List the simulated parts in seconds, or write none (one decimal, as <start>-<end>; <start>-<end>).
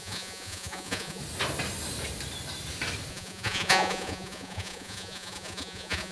0.0-1.2; 3.1-6.1